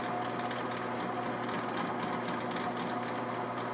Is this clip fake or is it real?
real